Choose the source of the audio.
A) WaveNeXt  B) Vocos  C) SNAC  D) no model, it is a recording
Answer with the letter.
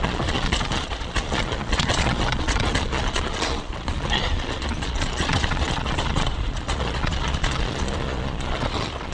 B